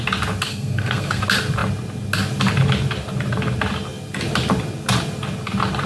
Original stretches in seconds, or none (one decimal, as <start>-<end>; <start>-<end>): 0.0-0.5; 1.2-5.9